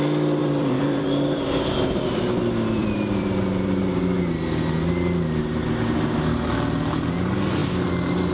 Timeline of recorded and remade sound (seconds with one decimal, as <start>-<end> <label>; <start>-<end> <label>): 0.0-0.4 recorded; 0.4-1.4 remade; 1.4-2.8 recorded; 2.8-3.8 remade; 3.8-8.3 recorded